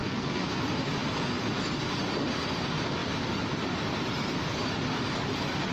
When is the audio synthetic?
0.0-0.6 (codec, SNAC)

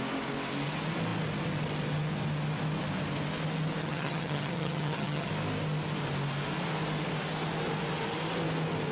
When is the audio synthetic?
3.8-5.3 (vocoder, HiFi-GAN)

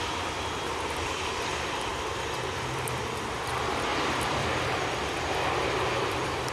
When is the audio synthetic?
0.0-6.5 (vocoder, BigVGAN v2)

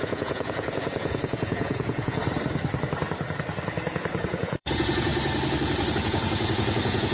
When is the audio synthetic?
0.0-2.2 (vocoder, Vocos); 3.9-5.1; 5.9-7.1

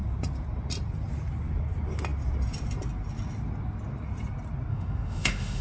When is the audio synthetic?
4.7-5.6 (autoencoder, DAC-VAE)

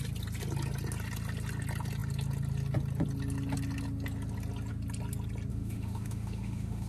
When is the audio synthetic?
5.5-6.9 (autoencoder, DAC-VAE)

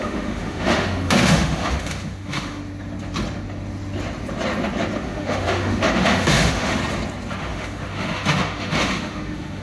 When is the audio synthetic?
0.0-2.6 (autoencoder, DAC-VAE); 5.0-6.8; 7.4-9.6

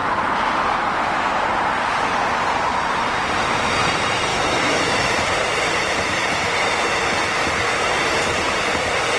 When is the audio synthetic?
4.3-5.1 (autoencoder, DAC-VAE)